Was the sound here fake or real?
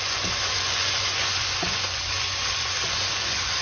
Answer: fake